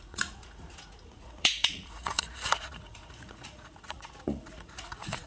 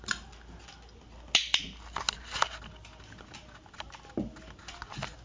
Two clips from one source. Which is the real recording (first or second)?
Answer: second